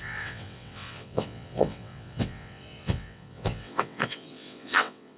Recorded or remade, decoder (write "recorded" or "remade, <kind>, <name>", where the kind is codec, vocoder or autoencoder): remade, vocoder, WaveNeXt